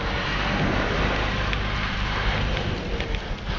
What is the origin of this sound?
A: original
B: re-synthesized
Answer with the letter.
A